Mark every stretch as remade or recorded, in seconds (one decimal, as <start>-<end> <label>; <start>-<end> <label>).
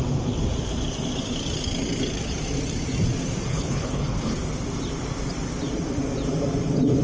0.0-3.5 recorded; 3.5-4.4 remade; 4.4-7.0 recorded